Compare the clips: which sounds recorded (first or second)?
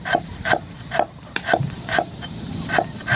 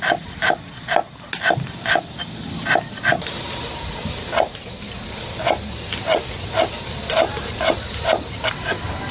second